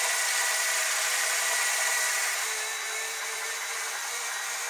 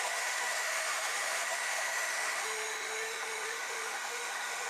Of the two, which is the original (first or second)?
first